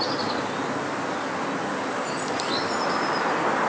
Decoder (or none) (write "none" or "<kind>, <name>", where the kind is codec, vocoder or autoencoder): none